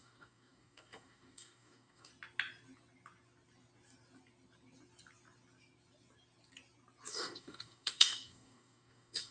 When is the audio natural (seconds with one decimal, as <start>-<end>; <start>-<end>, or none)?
2.1-7.1